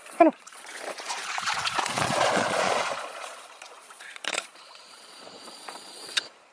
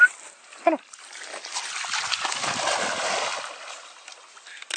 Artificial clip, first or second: first